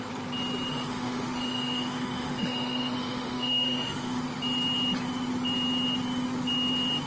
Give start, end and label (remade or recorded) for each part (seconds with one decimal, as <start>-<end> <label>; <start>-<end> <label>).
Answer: 0.0-0.7 recorded; 0.7-4.2 remade; 4.2-7.1 recorded